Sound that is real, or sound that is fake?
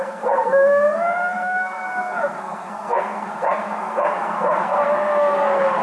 fake